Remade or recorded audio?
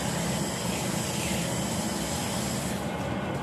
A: recorded